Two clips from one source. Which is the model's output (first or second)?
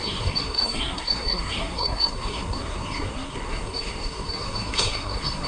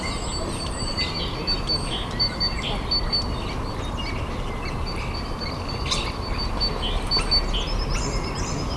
first